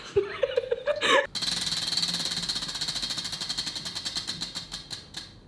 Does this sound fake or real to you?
real